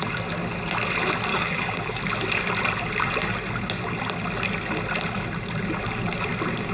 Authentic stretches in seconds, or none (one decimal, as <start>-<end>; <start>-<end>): 0.0-1.3; 2.0-6.7